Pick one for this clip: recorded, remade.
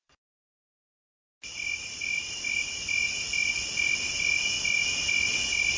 recorded